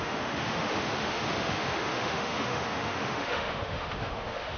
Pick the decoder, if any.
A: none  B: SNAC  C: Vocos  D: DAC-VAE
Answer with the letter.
D